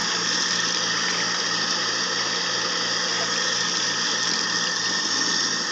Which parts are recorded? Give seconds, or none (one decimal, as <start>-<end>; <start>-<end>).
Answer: 0.0-5.7